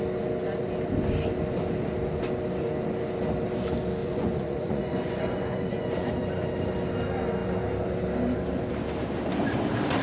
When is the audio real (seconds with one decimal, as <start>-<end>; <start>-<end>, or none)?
0.0-4.0; 6.1-10.0